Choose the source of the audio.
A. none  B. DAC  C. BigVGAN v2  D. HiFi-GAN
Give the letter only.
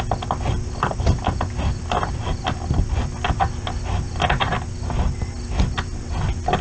A